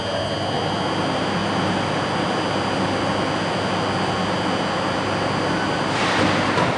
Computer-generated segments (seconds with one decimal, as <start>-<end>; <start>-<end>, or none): none